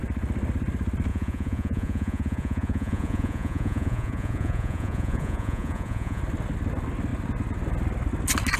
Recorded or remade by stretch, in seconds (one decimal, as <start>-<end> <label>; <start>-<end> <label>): 0.0-1.1 recorded; 1.1-6.2 remade; 6.2-8.6 recorded